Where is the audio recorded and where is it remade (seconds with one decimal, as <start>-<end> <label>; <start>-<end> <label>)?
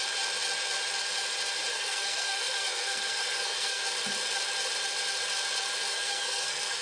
0.0-1.7 recorded; 1.7-3.8 remade; 3.8-5.9 recorded; 5.9-6.8 remade